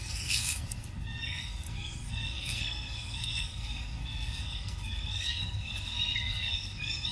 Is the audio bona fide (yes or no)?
no